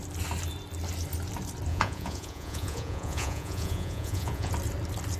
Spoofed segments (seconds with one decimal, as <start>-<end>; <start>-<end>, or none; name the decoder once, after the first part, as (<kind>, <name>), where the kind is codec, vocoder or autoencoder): 1.7-4.5 (vocoder, Vocos)